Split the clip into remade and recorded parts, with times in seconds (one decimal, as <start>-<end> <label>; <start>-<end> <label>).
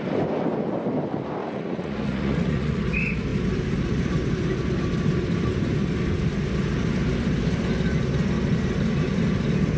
0.0-1.4 recorded; 1.4-2.8 remade; 2.8-9.8 recorded